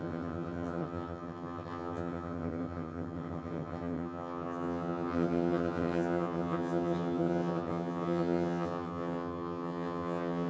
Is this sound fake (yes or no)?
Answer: yes